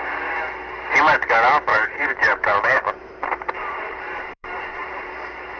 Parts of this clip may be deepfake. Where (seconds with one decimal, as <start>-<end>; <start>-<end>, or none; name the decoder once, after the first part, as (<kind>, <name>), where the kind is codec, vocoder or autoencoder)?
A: 1.7-5.1 (vocoder, BigVGAN v2)